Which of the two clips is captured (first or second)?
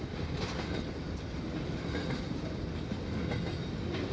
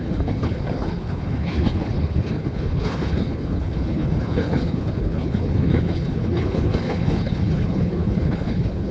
first